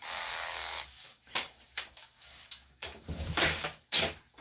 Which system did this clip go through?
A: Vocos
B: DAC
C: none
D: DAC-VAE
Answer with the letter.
B